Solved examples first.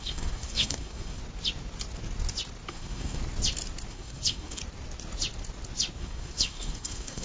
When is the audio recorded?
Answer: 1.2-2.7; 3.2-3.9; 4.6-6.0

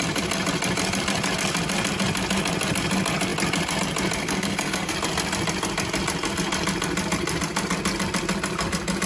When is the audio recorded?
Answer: 0.0-4.2; 4.9-9.1

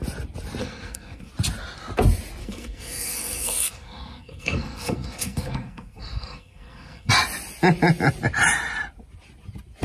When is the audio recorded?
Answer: 0.0-0.6; 1.3-2.4; 7.1-9.8